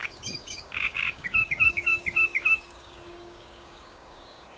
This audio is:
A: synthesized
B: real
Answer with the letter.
A